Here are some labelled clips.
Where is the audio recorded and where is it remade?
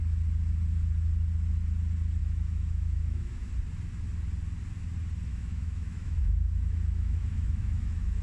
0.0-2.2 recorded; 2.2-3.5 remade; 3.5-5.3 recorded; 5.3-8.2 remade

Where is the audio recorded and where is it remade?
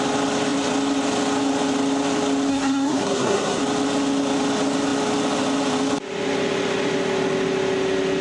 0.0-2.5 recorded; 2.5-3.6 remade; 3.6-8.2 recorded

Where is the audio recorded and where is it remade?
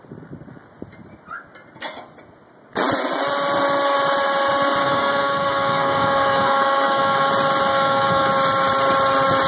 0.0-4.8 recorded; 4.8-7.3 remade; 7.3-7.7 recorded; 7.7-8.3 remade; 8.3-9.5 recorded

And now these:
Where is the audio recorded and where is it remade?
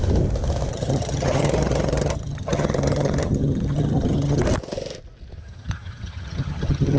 0.0-0.7 recorded; 0.7-4.4 remade; 4.4-5.4 recorded; 5.4-7.0 remade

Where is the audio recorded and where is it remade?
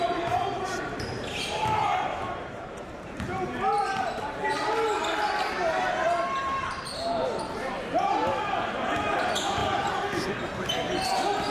0.0-3.8 remade; 3.8-5.8 recorded; 5.8-9.6 remade; 9.6-11.5 recorded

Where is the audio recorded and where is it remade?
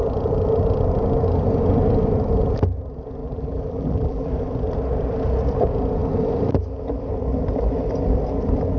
0.0-3.2 recorded; 3.2-4.3 remade; 4.3-8.8 recorded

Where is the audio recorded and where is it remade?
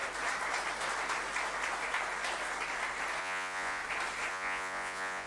0.0-3.2 recorded; 3.2-3.8 remade; 3.8-4.3 recorded; 4.3-5.3 remade